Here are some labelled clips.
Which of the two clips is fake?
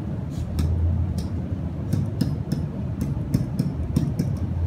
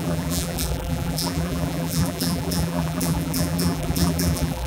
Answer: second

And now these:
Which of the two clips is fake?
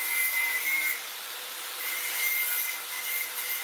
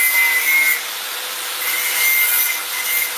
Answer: first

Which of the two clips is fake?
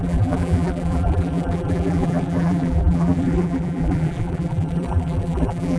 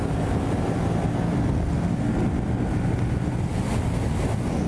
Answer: first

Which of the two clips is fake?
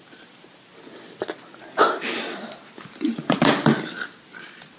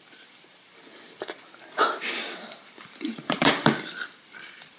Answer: second